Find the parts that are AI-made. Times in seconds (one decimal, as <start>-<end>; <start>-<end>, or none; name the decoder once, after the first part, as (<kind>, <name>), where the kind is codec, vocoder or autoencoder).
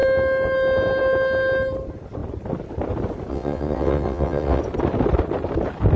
3.3-4.6 (vocoder, WaveNeXt)